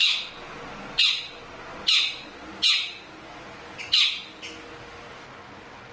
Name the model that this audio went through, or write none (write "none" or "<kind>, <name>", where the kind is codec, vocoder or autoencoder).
none